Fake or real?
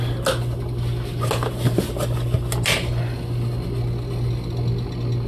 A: real